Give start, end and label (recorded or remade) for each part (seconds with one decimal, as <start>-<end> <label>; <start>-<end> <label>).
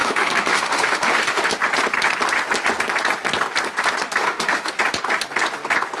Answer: 0.0-1.5 remade; 1.5-4.2 recorded; 4.2-4.7 remade; 4.7-6.0 recorded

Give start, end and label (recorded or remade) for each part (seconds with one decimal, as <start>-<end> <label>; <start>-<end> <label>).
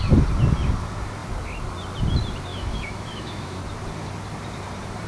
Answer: 0.0-2.5 recorded; 2.5-3.6 remade; 3.6-5.1 recorded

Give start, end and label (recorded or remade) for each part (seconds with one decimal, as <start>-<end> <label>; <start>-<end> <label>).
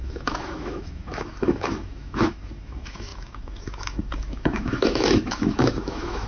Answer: 0.0-6.3 remade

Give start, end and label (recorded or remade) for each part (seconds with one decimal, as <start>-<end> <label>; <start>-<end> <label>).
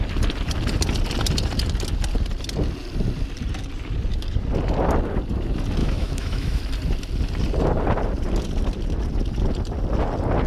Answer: 0.0-5.8 recorded; 5.8-6.6 remade; 6.6-10.5 recorded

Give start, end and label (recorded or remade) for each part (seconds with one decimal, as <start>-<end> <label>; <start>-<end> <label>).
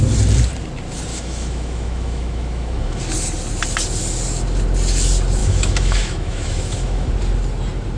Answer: 0.0-1.1 recorded; 1.1-3.0 remade; 3.0-5.4 recorded; 5.4-7.1 remade; 7.1-8.0 recorded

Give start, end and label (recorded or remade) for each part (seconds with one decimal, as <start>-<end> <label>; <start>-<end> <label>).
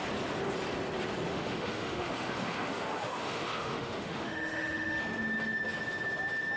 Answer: 0.0-1.3 recorded; 1.3-5.0 remade; 5.0-6.6 recorded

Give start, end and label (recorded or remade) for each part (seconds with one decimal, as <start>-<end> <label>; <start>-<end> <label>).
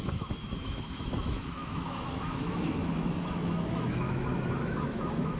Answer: 0.0-5.4 remade